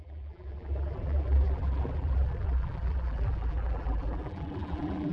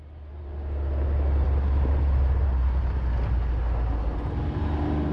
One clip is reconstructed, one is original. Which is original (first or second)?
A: second